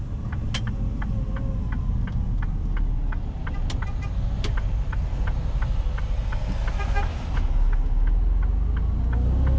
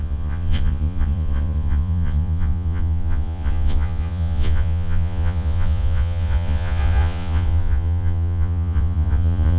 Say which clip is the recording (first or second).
first